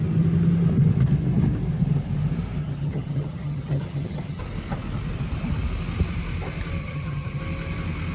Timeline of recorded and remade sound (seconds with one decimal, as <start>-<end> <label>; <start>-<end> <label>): 0.0-2.6 recorded; 2.6-4.4 remade; 4.4-6.8 recorded; 6.8-7.4 remade; 7.4-8.1 recorded